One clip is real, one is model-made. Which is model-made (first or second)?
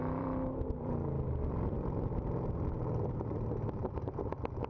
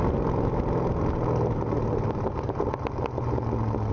first